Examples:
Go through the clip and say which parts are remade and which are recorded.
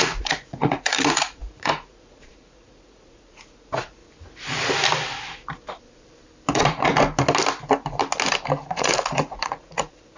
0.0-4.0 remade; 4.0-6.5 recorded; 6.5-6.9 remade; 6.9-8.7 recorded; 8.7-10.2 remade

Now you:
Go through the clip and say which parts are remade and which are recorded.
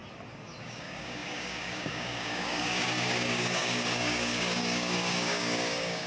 0.0-0.6 recorded; 0.6-6.1 remade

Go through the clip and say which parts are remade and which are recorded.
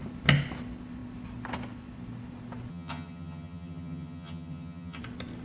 0.0-2.7 recorded; 2.7-5.0 remade; 5.0-5.4 recorded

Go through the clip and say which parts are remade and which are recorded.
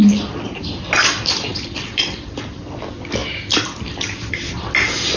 0.0-1.5 recorded; 1.5-2.0 remade; 2.0-5.2 recorded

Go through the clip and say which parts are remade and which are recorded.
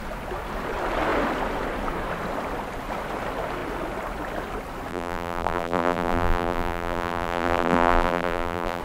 0.0-4.9 recorded; 4.9-8.8 remade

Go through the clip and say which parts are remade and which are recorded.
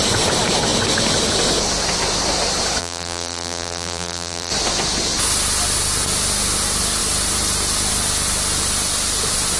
0.0-2.8 recorded; 2.8-4.5 remade; 4.5-9.6 recorded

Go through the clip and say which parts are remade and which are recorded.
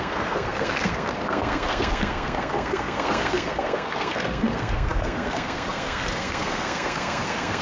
0.0-7.6 remade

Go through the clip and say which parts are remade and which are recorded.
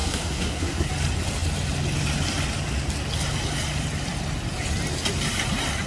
0.0-0.9 remade; 0.9-5.9 recorded